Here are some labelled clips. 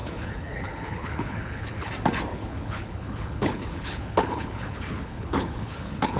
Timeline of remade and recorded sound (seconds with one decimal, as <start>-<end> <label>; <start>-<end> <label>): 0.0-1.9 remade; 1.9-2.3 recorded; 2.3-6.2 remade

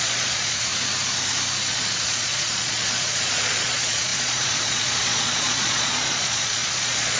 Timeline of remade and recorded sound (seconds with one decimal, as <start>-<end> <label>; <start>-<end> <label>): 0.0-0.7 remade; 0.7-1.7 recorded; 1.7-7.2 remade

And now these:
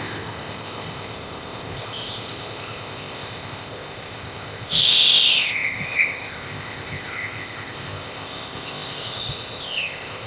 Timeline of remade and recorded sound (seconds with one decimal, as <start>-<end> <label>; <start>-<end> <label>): 0.0-10.3 remade

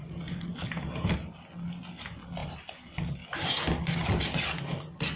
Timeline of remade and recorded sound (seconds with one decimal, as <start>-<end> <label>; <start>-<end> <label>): 0.0-5.2 recorded

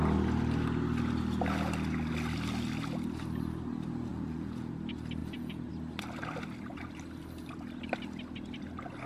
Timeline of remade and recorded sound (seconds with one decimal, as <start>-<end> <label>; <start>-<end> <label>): 0.0-4.1 recorded; 4.1-4.7 remade; 4.7-5.2 recorded; 5.2-5.7 remade; 5.7-9.1 recorded

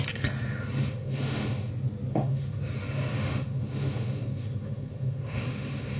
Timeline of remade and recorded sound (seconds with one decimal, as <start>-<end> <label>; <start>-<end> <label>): 0.0-0.9 recorded; 0.9-1.7 remade; 1.7-2.1 recorded; 2.1-2.6 remade; 2.6-3.1 recorded; 3.1-6.0 remade